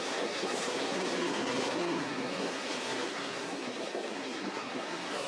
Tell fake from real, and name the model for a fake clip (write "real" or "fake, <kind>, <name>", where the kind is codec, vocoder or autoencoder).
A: fake, codec, SNAC